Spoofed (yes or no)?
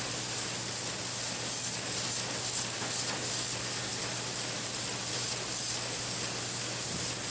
no